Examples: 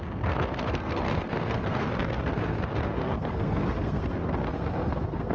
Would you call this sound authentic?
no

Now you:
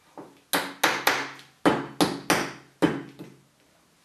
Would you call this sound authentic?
yes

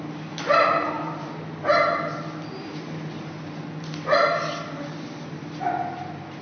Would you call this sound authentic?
yes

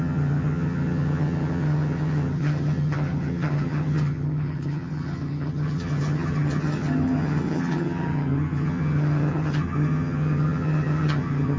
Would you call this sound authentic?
no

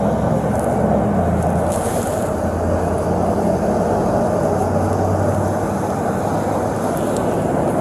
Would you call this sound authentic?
yes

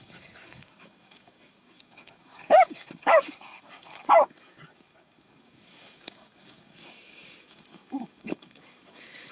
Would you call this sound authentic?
no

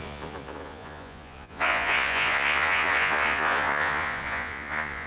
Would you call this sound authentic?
no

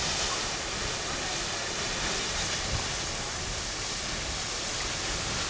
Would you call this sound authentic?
yes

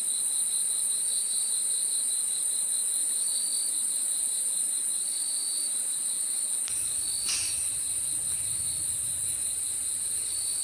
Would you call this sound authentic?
yes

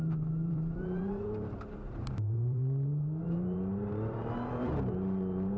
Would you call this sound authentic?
no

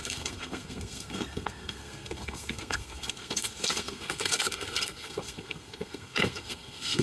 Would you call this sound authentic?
no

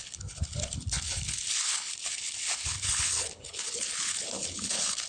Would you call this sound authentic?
no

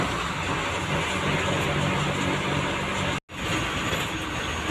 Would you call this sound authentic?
yes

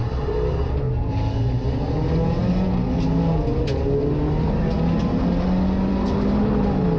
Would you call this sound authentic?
yes